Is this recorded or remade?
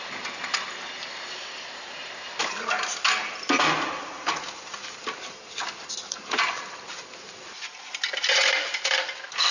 recorded